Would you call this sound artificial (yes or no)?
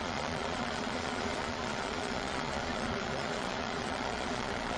yes